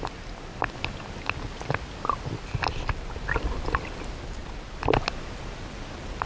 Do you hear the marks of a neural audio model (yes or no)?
no